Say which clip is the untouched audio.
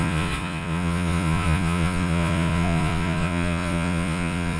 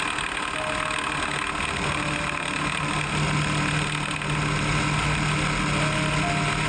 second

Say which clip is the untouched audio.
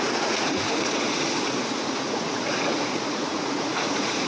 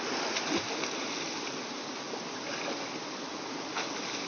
second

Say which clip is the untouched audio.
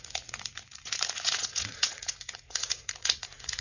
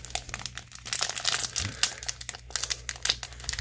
second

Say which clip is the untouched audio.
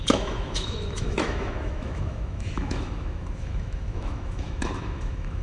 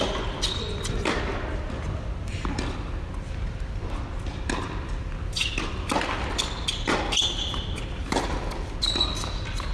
second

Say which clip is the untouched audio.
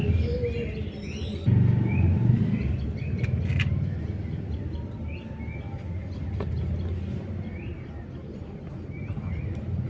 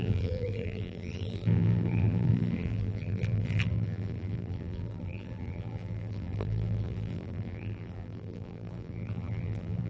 first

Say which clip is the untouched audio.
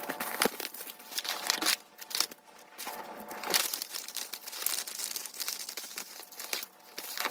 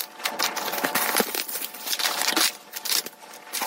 first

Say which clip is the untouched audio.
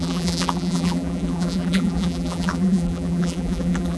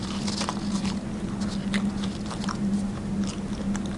second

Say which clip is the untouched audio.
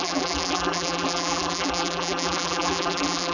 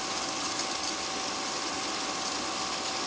second